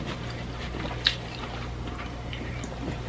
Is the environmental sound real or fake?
real